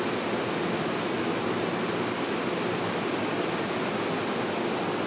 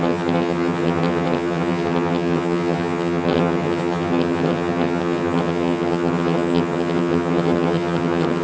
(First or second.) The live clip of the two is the first